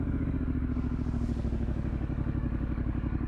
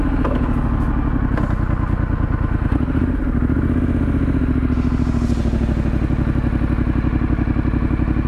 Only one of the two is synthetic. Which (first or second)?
first